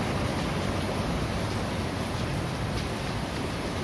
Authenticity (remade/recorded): recorded